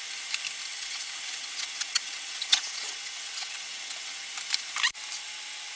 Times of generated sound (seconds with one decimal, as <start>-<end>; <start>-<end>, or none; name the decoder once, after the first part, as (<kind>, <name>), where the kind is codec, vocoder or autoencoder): 0.7-4.2 (vocoder, WaveNeXt)